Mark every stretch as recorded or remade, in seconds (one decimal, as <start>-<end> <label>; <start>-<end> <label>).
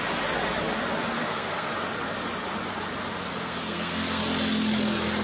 0.0-1.2 recorded; 1.2-1.7 remade; 1.7-3.4 recorded; 3.4-4.2 remade; 4.2-5.2 recorded